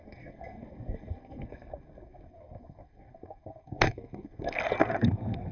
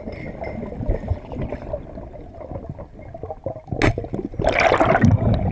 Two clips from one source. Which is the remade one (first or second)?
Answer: first